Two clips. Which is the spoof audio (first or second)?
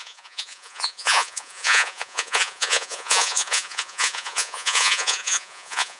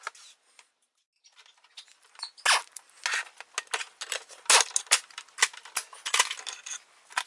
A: first